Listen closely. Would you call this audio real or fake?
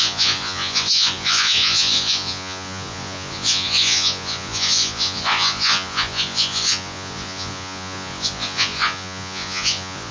fake